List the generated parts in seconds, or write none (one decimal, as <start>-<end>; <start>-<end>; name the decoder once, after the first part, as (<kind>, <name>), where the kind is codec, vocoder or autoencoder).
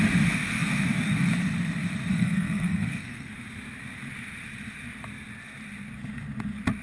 2.1-3.3 (codec, SNAC)